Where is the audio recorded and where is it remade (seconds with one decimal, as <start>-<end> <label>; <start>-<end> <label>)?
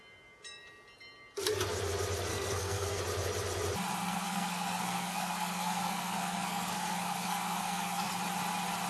0.0-2.3 recorded; 2.3-3.0 remade; 3.0-4.0 recorded; 4.0-8.1 remade; 8.1-8.9 recorded